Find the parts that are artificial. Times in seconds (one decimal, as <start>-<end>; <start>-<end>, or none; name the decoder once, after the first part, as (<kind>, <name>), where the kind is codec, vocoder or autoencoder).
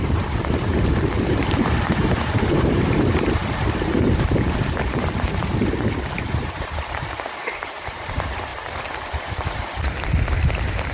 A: 0.0-3.4 (vocoder, BigVGAN v2); 5.3-10.9